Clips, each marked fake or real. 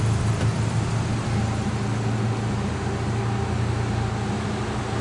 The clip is real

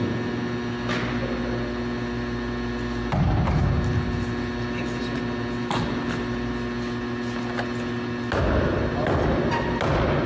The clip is real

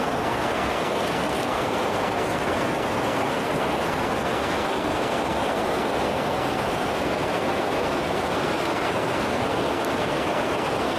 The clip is fake